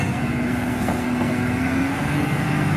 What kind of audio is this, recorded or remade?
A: remade